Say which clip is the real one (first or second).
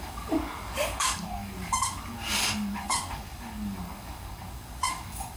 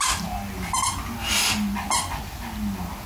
second